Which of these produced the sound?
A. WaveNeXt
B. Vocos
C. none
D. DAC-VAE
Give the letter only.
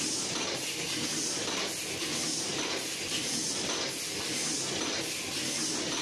C